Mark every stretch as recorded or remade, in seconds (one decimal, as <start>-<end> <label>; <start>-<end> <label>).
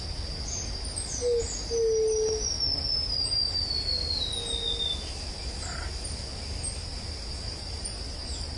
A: 0.0-8.6 recorded